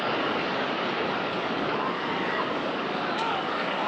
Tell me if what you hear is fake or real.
fake